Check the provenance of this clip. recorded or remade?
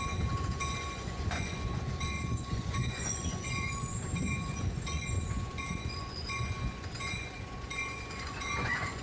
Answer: remade